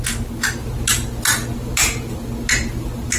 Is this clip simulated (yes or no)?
no